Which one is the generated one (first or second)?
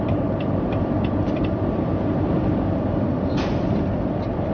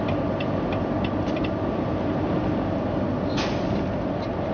first